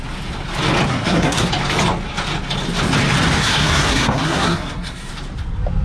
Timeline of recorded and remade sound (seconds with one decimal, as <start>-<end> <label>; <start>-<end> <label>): 0.0-0.9 recorded; 0.9-1.5 remade; 1.5-3.4 recorded; 3.4-5.1 remade; 5.1-5.8 recorded